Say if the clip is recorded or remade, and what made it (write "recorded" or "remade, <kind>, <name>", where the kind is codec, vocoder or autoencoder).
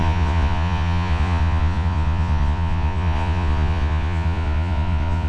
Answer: remade, vocoder, Vocos